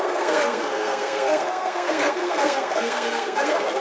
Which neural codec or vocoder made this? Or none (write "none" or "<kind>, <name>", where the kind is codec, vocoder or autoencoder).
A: codec, SNAC